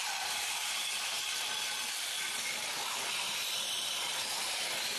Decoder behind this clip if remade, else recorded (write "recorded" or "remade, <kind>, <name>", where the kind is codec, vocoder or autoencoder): recorded